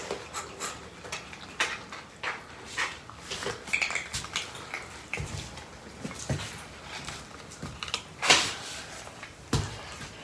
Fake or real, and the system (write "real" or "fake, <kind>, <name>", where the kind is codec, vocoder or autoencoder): real